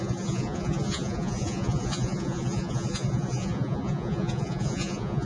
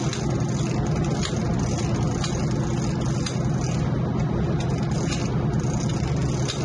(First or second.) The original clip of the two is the second